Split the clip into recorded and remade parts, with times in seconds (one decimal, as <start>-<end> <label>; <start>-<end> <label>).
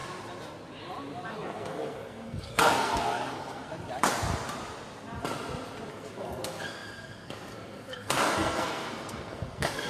0.0-1.3 recorded; 1.3-3.7 remade; 3.7-5.9 recorded; 5.9-9.9 remade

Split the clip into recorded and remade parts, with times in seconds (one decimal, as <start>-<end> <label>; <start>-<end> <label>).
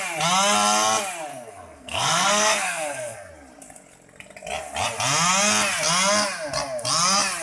0.0-1.3 recorded; 1.3-3.3 remade; 3.3-7.4 recorded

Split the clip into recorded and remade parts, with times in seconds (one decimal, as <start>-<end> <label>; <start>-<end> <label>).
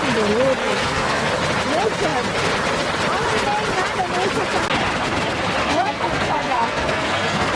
0.0-0.6 recorded; 0.6-1.3 remade; 1.3-5.6 recorded; 5.6-7.5 remade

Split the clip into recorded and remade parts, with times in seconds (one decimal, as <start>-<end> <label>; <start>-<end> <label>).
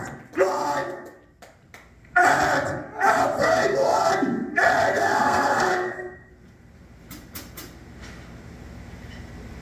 0.0-3.4 recorded; 3.4-4.1 remade; 4.1-5.0 recorded; 5.0-6.3 remade; 6.3-9.6 recorded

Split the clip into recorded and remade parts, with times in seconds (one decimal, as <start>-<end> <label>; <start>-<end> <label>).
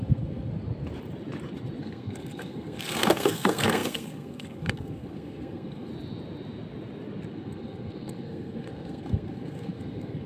0.0-0.5 remade; 0.5-1.8 recorded; 1.8-5.9 remade; 5.9-7.3 recorded; 7.3-10.3 remade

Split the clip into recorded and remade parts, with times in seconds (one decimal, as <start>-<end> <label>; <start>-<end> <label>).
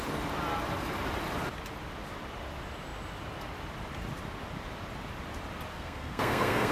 0.0-5.7 recorded; 5.7-6.7 remade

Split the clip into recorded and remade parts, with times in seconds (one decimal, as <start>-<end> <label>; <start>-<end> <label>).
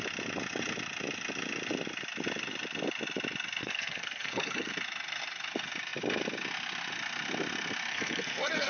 0.0-3.6 recorded; 3.6-4.7 remade; 4.7-7.9 recorded; 7.9-8.7 remade